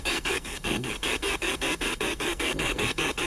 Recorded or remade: remade